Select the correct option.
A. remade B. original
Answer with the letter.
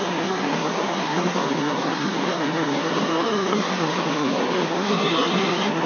A